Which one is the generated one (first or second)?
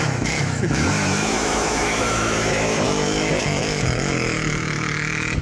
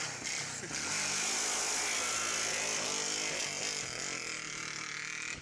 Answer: first